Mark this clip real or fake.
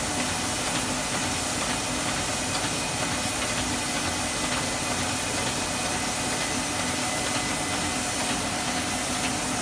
real